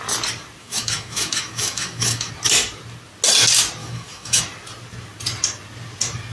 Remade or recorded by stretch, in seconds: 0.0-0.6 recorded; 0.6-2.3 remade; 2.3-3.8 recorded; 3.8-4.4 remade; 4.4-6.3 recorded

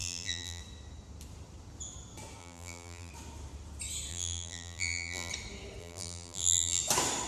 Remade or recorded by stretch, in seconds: 0.0-0.6 remade; 0.6-2.4 recorded; 2.4-3.1 remade; 3.1-4.1 recorded; 4.1-5.3 remade; 5.3-5.8 recorded; 5.8-6.8 remade; 6.8-7.3 recorded

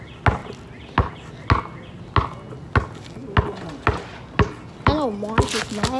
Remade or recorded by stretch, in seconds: 0.0-6.0 recorded

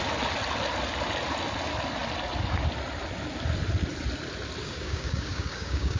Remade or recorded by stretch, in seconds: 0.0-4.6 recorded; 4.6-6.0 remade

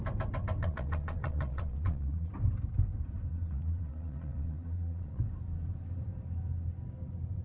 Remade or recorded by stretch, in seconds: 0.0-0.6 recorded; 0.6-2.3 remade; 2.3-3.3 recorded; 3.3-5.2 remade; 5.2-7.4 recorded

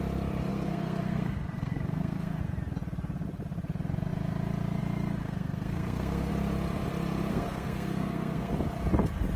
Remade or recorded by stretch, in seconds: 0.0-0.5 recorded; 0.5-2.4 remade; 2.4-5.2 recorded; 5.2-6.3 remade; 6.3-7.3 recorded; 7.3-8.5 remade; 8.5-9.4 recorded

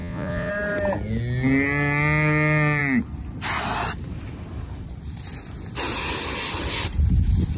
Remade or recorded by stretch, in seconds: 0.0-0.5 remade; 0.5-7.6 recorded